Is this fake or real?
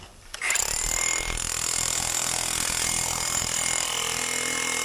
real